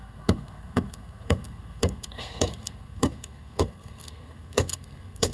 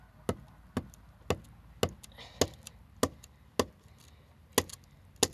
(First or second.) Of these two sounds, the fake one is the first